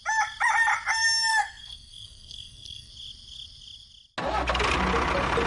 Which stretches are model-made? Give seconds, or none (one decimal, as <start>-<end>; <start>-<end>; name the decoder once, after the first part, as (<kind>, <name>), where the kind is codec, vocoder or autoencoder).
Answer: 1.3-2.9 (codec, SNAC)